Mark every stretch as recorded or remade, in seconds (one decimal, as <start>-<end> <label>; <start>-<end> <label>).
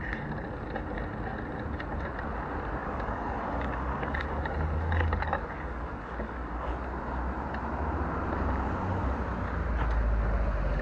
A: 0.0-2.8 recorded; 2.8-6.7 remade; 6.7-10.8 recorded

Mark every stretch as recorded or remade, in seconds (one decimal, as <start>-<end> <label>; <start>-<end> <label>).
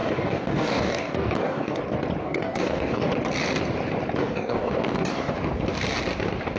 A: 0.0-1.8 remade; 1.8-2.2 recorded; 2.2-3.1 remade; 3.1-4.2 recorded; 4.2-5.3 remade; 5.3-6.6 recorded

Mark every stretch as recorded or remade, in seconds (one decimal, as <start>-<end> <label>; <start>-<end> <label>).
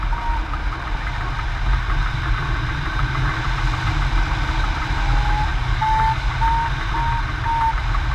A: 0.0-5.5 recorded; 5.5-6.3 remade; 6.3-8.1 recorded